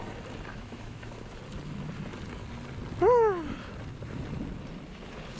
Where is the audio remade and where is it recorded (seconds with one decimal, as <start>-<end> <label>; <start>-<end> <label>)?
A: 0.0-0.5 recorded; 0.5-1.4 remade; 1.4-5.4 recorded